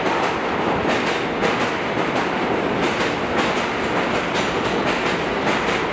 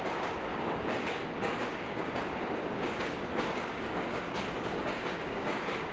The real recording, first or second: first